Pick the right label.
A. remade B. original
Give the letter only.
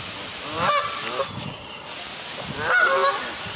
B